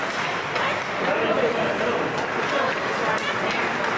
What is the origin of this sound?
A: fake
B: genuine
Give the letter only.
B